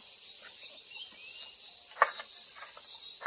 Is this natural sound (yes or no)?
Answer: yes